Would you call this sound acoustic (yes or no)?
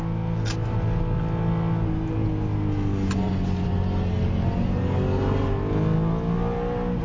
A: yes